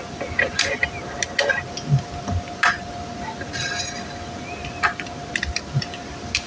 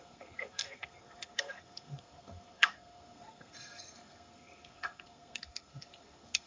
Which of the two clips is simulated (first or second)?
second